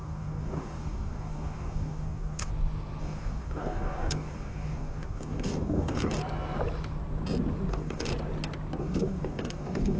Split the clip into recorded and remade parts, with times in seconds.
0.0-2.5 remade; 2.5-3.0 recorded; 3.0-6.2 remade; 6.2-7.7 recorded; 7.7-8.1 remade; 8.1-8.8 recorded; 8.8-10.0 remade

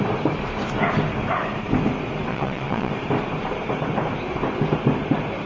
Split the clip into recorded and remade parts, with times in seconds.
0.0-2.3 recorded; 2.3-2.9 remade; 2.9-5.5 recorded

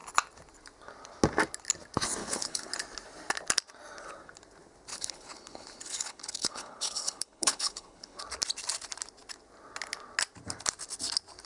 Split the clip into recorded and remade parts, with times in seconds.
0.0-2.2 recorded; 2.2-2.7 remade; 2.7-4.9 recorded; 4.9-8.2 remade; 8.2-11.5 recorded

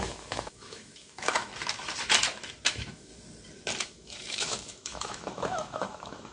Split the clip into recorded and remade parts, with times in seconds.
0.0-1.5 remade; 1.5-2.7 recorded; 2.7-3.1 remade; 3.1-3.8 recorded; 3.8-6.3 remade

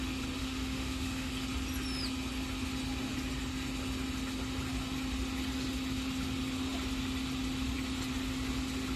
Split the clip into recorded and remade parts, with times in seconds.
0.0-0.4 recorded; 0.4-1.3 remade; 1.3-9.0 recorded

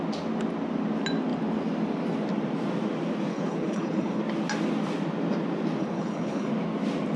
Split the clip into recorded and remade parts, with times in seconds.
0.0-3.3 recorded; 3.3-4.2 remade; 4.2-5.8 recorded; 5.8-6.5 remade; 6.5-7.2 recorded

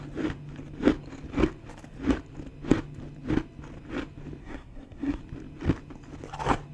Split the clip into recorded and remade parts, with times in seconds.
0.0-4.4 recorded; 4.4-5.2 remade; 5.2-6.7 recorded

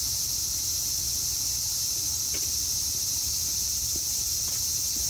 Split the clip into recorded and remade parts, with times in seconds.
0.0-1.0 recorded; 1.0-3.3 remade; 3.3-5.1 recorded